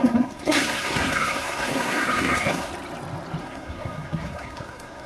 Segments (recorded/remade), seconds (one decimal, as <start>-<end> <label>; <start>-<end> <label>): 0.0-2.7 remade; 2.7-3.4 recorded; 3.4-5.1 remade